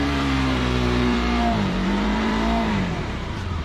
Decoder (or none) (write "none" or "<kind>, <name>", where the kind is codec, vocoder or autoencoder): vocoder, BigVGAN v2